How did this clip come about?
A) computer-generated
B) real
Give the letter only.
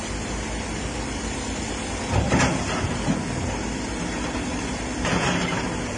B